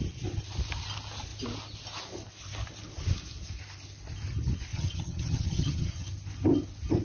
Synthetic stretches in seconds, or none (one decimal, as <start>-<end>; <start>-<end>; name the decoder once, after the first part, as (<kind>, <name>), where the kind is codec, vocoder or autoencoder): 4.7-6.1 (vocoder, HiFi-GAN)